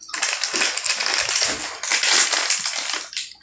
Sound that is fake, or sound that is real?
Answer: real